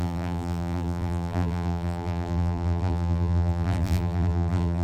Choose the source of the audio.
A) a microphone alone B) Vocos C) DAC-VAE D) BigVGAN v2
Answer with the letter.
D